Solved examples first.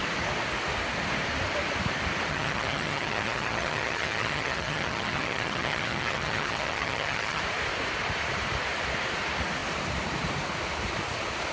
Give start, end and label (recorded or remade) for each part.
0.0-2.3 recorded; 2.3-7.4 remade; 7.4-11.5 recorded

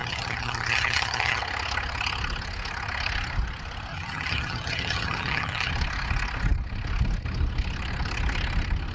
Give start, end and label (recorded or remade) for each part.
0.0-1.4 remade; 1.4-3.9 recorded; 3.9-5.7 remade; 5.7-8.9 recorded

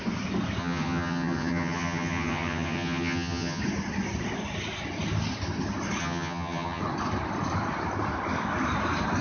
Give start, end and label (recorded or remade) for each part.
0.0-0.6 recorded; 0.6-3.6 remade; 3.6-6.0 recorded; 6.0-6.8 remade; 6.8-9.2 recorded